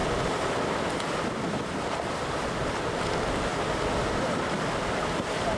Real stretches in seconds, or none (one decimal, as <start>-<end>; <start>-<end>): 0.0-5.6